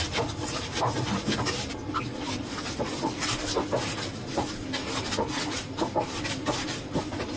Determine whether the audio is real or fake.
real